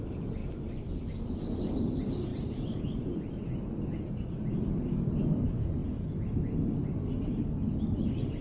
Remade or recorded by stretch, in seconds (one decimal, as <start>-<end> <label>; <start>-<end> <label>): 0.0-0.4 recorded; 0.4-1.3 remade; 1.3-2.3 recorded; 2.3-3.3 remade; 3.3-8.4 recorded